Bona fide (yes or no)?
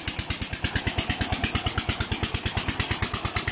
yes